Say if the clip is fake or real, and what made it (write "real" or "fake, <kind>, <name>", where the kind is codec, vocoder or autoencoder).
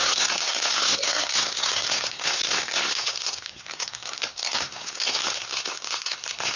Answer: fake, codec, SNAC